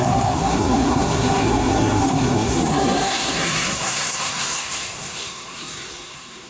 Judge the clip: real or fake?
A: fake